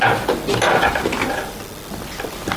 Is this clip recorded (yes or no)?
yes